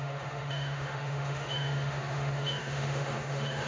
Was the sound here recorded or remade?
remade